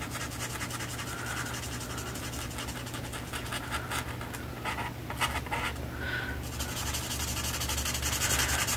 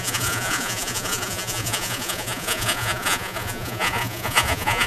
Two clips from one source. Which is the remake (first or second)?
second